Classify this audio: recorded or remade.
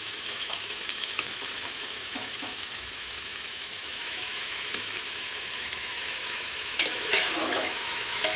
remade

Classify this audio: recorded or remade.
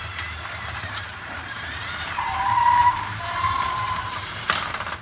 remade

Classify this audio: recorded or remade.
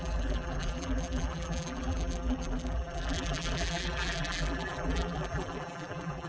remade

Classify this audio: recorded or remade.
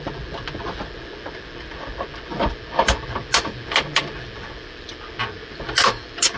recorded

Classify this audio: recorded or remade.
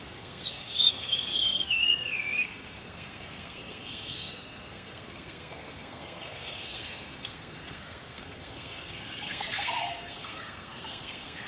remade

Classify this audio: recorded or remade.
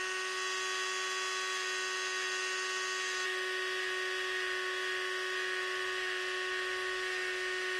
recorded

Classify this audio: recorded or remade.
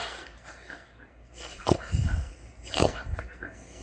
remade